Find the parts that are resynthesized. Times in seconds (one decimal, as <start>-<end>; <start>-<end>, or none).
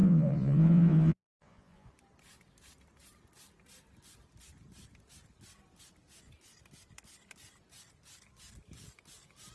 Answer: 0.0-1.9